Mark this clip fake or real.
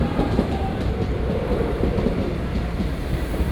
fake